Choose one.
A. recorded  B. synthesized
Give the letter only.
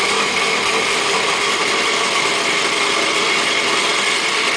B